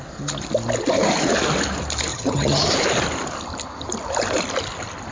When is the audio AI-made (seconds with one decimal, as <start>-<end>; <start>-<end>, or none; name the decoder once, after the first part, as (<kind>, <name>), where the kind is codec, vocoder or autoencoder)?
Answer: 2.1-2.7 (vocoder, HiFi-GAN)